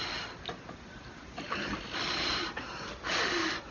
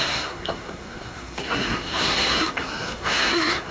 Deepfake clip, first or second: second